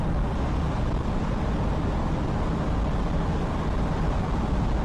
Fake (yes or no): no